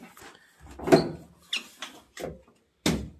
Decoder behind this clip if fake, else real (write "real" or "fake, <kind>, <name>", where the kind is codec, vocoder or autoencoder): real